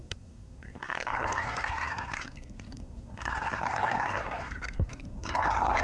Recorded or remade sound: remade